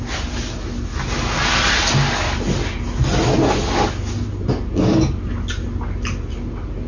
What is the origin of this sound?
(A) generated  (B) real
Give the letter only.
B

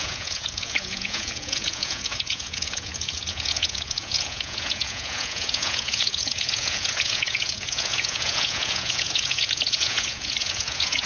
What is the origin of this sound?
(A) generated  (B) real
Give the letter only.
A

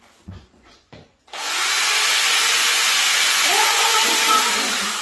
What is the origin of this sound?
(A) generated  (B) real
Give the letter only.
A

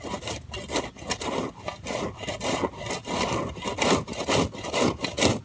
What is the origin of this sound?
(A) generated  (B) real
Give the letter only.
B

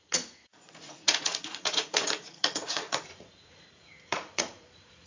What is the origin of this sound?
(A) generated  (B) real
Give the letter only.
A